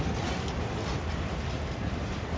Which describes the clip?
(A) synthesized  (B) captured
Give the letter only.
B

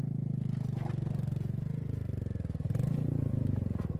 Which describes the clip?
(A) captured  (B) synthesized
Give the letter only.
A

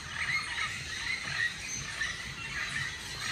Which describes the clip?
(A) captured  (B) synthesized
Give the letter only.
A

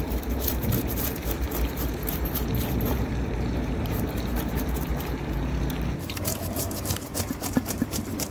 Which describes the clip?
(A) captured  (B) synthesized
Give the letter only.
B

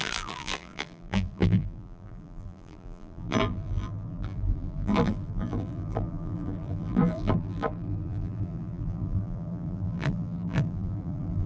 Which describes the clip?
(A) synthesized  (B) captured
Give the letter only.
A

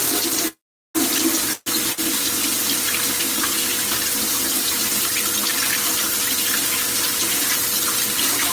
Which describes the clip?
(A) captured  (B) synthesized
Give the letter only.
A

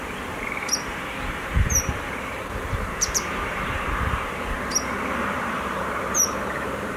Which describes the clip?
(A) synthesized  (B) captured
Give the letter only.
A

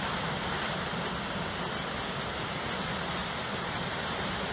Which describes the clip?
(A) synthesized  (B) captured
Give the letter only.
B